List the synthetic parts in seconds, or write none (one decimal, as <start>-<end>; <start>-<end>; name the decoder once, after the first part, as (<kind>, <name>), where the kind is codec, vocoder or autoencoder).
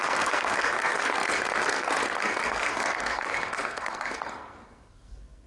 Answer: 0.0-5.5 (codec, SNAC)